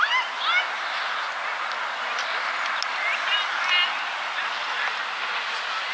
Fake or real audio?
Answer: real